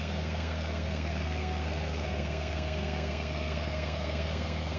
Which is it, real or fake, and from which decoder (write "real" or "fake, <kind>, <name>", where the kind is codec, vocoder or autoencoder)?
fake, codec, SNAC